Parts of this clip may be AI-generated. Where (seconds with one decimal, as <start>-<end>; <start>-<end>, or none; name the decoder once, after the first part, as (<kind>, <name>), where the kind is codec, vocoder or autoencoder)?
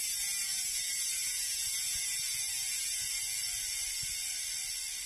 0.0-2.0 (vocoder, Vocos)